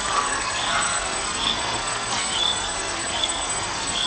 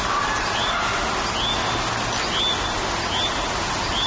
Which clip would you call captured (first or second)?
second